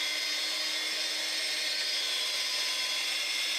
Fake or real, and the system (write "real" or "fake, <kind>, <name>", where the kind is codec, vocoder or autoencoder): real